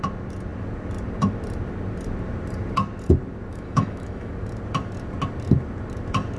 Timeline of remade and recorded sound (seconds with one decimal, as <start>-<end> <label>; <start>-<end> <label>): 0.0-3.5 recorded; 3.5-4.3 remade; 4.3-6.4 recorded